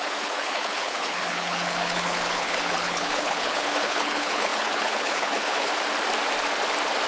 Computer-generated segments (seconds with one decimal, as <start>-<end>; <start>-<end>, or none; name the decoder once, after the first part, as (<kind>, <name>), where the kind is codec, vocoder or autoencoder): 0.0-5.7 (codec, HILCodec)